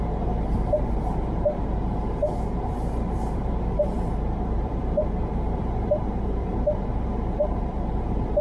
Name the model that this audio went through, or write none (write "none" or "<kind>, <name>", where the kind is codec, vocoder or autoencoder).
vocoder, BigVGAN v2